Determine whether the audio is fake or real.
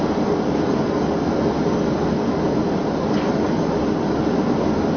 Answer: real